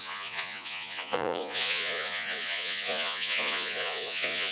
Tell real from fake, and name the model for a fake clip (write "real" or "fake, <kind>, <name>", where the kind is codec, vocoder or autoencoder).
fake, vocoder, Vocos